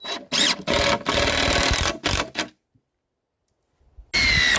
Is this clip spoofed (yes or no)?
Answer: no